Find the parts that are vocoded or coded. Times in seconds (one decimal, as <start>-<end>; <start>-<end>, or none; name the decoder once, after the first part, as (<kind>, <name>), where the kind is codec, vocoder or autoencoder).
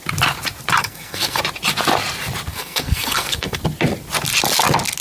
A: 0.8-1.4 (codec, SNAC); 2.5-3.6